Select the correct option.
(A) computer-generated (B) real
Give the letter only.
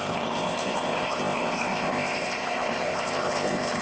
A